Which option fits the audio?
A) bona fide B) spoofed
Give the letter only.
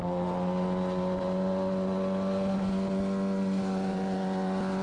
A